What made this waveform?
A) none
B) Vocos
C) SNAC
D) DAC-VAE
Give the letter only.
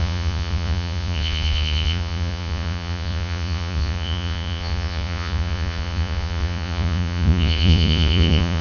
B